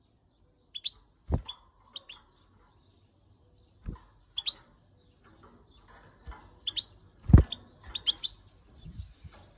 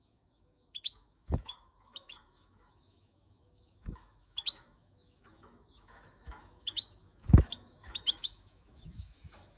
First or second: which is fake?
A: second